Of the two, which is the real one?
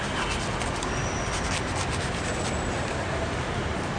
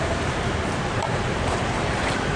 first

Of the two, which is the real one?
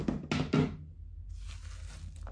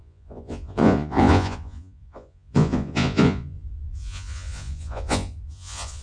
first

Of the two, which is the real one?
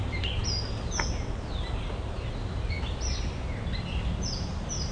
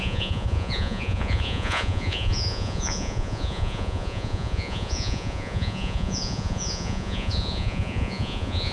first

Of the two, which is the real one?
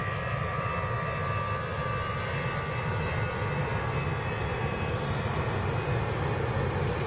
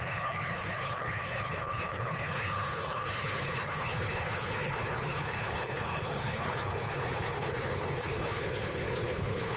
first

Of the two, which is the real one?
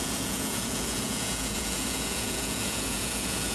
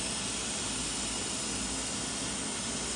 second